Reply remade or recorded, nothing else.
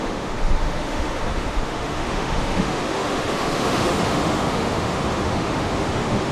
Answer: remade